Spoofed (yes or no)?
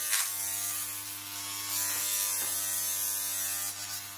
no